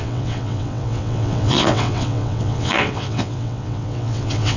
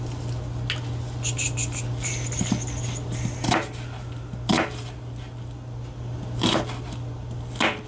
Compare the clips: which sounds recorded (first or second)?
second